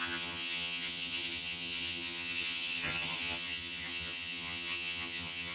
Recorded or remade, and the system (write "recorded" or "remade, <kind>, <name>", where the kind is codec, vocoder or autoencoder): remade, vocoder, HiFi-GAN